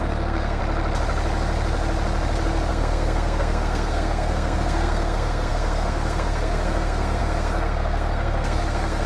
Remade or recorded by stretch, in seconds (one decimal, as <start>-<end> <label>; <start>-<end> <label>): 0.0-0.6 remade; 0.6-2.7 recorded; 2.7-9.1 remade